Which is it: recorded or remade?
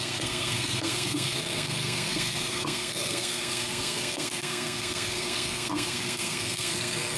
remade